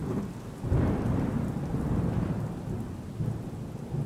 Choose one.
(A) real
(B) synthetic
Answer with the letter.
A